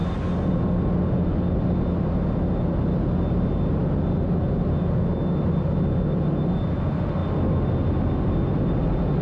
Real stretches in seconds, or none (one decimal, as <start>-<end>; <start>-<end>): 0.0-9.2